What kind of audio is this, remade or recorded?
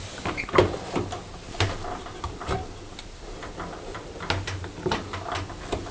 recorded